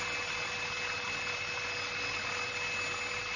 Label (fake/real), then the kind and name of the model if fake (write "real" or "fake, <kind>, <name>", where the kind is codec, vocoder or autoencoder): real